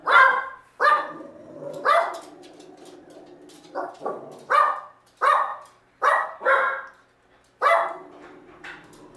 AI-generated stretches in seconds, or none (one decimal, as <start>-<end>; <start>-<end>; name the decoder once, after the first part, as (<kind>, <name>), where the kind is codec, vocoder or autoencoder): 0.0-2.0 (vocoder, BigVGAN v2); 5.5-6.1